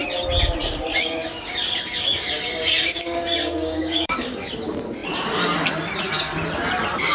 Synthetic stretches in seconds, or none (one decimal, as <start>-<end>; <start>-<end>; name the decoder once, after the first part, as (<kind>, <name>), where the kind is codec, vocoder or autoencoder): 0.9-4.5 (codec, DAC)